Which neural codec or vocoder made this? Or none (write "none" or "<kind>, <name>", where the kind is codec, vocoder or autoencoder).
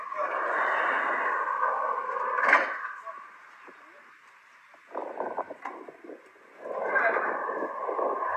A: none